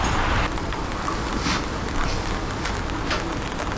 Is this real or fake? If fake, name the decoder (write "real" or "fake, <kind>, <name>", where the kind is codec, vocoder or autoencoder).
real